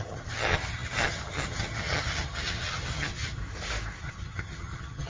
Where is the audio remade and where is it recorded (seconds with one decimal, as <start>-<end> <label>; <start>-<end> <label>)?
0.0-3.4 remade; 3.4-4.0 recorded; 4.0-5.1 remade